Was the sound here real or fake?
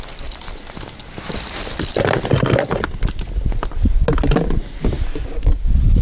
real